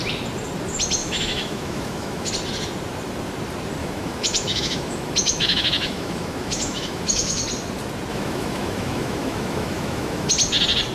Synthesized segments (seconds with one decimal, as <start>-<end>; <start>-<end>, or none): 1.0-2.3; 3.8-7.4; 8.1-10.3